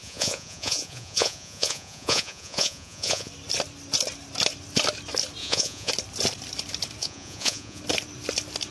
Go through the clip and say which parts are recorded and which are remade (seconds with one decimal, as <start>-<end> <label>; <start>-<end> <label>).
0.0-3.3 remade; 3.3-5.4 recorded; 5.4-5.9 remade; 5.9-7.0 recorded; 7.0-7.8 remade; 7.8-8.7 recorded